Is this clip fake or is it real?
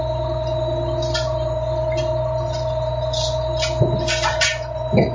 real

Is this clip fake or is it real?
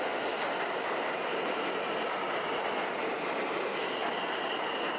real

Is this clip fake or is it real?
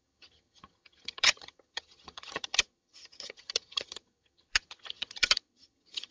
fake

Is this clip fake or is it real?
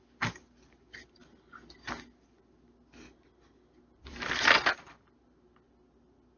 real